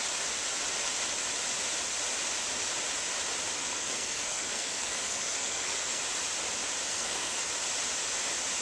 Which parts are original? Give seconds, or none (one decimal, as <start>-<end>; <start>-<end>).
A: 0.0-3.6; 6.0-6.9; 7.4-8.6